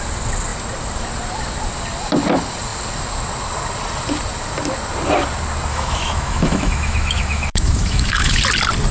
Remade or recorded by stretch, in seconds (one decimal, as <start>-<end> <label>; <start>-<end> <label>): 0.0-5.7 recorded; 5.7-8.4 remade; 8.4-8.9 recorded